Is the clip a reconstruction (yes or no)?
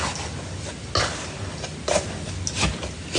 no